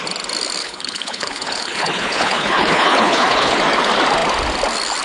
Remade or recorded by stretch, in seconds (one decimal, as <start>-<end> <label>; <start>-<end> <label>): 0.0-0.6 recorded; 0.6-3.6 remade; 3.6-5.0 recorded